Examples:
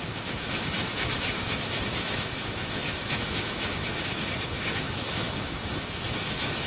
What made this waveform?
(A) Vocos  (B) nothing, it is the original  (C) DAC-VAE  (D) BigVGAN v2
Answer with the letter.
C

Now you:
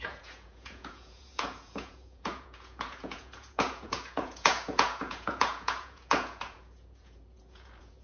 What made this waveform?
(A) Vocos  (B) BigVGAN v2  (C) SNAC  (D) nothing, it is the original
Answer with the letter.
A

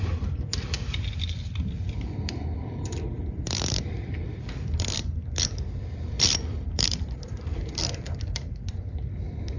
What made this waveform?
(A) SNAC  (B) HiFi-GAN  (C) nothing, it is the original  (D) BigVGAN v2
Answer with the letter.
D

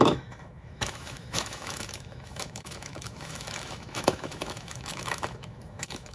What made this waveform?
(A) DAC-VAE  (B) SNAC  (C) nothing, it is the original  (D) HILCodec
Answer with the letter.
A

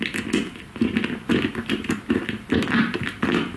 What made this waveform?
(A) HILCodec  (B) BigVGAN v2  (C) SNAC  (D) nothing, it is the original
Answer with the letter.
D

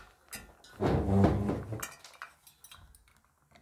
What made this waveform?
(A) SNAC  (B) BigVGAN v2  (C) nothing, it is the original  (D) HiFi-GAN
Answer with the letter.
C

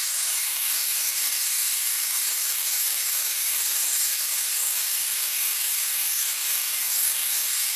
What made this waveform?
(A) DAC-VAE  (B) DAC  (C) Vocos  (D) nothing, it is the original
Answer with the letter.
B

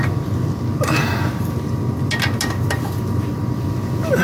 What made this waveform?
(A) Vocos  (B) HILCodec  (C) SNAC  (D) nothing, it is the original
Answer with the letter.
D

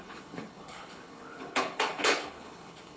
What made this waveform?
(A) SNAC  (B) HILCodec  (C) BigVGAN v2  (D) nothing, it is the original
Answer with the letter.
B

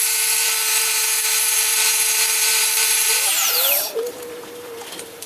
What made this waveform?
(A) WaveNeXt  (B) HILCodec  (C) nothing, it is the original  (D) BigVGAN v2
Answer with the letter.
D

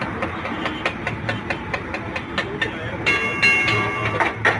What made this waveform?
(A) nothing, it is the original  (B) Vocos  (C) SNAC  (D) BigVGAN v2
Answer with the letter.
A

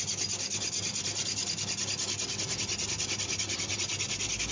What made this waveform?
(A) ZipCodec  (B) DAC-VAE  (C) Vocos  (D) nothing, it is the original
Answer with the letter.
D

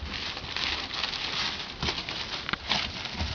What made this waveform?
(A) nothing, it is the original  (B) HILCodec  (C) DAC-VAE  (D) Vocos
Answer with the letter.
A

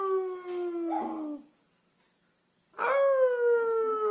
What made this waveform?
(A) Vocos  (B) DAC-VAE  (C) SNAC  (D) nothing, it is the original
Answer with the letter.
D